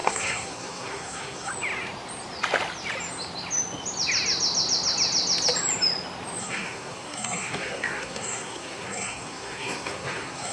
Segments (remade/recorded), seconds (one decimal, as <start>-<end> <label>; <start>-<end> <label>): 0.0-1.5 remade; 1.5-6.4 recorded; 6.4-10.5 remade